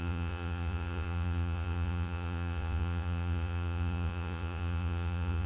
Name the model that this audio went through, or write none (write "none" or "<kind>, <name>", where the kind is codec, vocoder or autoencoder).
vocoder, Vocos